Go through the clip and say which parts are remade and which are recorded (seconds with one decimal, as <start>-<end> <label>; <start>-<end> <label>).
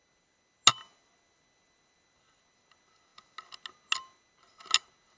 0.0-5.2 recorded